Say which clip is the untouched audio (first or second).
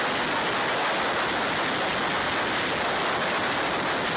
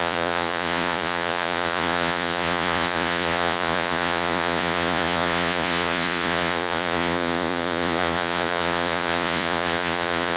first